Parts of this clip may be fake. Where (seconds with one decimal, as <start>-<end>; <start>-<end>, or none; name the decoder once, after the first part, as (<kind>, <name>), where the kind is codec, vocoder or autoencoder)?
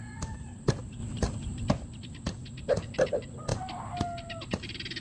3.5-4.0 (vocoder, BigVGAN v2)